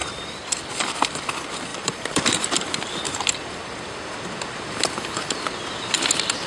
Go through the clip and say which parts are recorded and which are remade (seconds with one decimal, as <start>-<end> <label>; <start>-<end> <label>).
0.0-0.7 remade; 0.7-1.7 recorded; 1.7-4.3 remade; 4.3-6.5 recorded